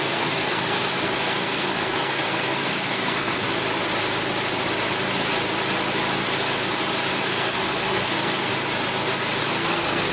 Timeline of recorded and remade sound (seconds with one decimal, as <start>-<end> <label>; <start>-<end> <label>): 0.0-3.5 remade; 3.5-7.1 recorded; 7.1-8.5 remade; 8.5-9.4 recorded; 9.4-10.1 remade